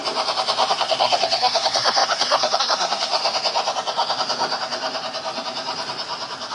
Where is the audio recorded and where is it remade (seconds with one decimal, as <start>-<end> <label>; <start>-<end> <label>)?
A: 0.0-0.7 recorded; 0.7-3.2 remade; 3.2-6.5 recorded